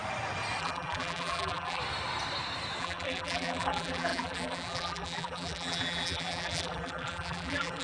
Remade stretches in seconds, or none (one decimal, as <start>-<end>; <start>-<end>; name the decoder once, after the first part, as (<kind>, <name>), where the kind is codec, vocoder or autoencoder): 0.6-1.8 (vocoder, BigVGAN v2); 2.8-7.8